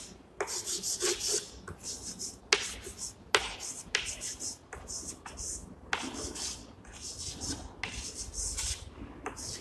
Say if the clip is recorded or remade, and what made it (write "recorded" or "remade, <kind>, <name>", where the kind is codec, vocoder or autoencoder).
recorded